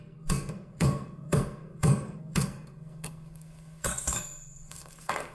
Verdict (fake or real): fake